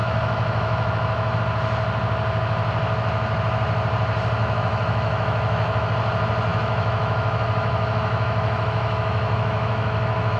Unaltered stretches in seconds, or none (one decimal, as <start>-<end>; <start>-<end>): 1.4-4.4; 5.9-6.5